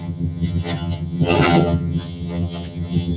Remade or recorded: remade